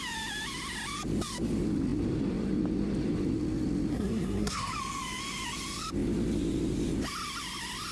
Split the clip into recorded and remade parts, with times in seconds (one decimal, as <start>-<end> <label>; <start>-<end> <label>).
0.0-3.9 recorded; 3.9-4.7 remade; 4.7-7.9 recorded